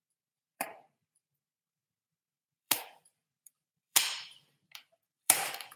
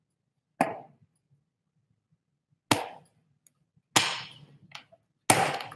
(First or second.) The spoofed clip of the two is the first